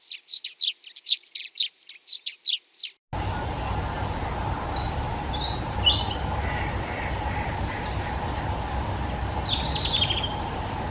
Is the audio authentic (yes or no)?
yes